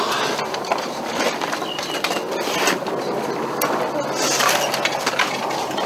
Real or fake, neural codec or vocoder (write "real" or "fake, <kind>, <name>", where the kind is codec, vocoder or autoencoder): real